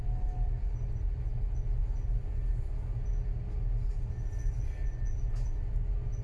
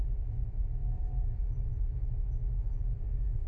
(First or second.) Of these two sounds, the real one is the first